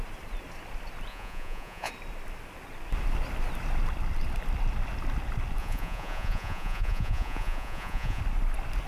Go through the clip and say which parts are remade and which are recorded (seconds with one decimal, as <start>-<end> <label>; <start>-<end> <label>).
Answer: 0.0-1.1 recorded; 1.1-1.9 remade; 1.9-5.6 recorded; 5.6-8.2 remade; 8.2-8.9 recorded